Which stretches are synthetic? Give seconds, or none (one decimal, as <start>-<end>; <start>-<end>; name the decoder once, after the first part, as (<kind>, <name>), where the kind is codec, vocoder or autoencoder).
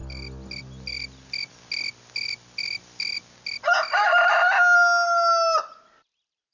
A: none